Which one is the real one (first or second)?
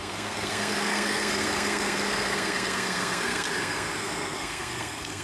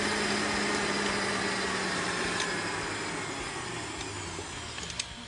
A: second